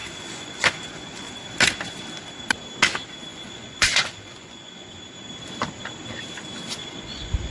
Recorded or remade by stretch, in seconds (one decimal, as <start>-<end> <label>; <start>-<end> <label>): 0.0-1.3 remade; 1.3-3.3 recorded; 3.3-5.0 remade; 5.0-6.8 recorded; 6.8-7.5 remade